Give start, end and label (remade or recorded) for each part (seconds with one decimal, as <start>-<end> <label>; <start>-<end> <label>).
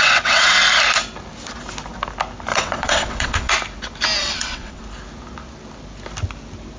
0.0-0.6 remade; 0.6-2.5 recorded; 2.5-3.5 remade; 3.5-4.2 recorded; 4.2-4.8 remade; 4.8-6.8 recorded